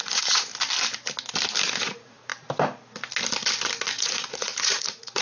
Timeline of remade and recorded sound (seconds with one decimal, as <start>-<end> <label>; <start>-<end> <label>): 0.0-0.5 remade; 0.5-1.8 recorded; 1.8-2.3 remade; 2.3-3.9 recorded; 3.9-5.2 remade